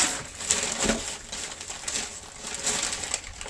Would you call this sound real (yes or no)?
yes